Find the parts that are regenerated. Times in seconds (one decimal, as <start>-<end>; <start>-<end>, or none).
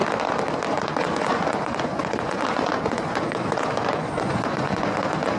0.7-5.4